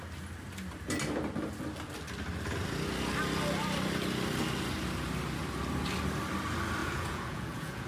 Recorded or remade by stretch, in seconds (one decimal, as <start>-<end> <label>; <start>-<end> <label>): 0.0-6.8 recorded; 6.8-7.9 remade